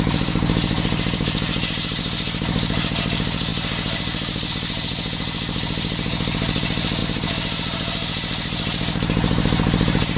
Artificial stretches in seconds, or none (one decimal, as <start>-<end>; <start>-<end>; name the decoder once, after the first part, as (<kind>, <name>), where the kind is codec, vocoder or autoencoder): 0.0-10.2 (vocoder, BigVGAN v2)

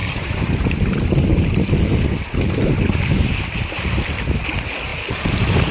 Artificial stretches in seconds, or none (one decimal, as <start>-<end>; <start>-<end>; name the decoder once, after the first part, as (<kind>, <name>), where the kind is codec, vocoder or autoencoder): 0.0-3.0 (vocoder, BigVGAN v2); 4.9-5.7

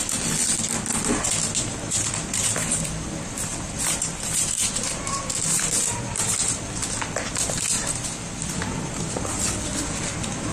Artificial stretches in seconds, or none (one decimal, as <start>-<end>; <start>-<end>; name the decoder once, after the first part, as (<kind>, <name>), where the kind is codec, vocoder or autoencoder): 0.0-6.8 (vocoder, BigVGAN v2); 8.4-10.5